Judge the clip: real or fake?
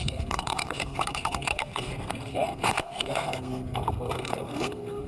fake